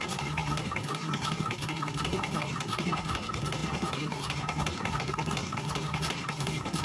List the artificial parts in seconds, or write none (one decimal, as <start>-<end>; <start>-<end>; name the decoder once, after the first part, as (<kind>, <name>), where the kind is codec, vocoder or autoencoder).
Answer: 0.0-6.8 (codec, SNAC)